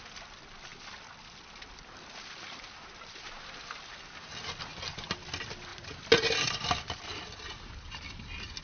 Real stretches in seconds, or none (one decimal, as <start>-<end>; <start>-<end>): 0.0-8.6